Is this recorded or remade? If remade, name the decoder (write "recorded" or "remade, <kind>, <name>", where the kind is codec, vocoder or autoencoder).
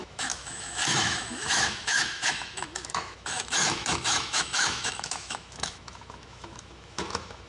remade, autoencoder, DAC-VAE